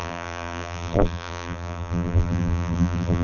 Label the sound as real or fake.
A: fake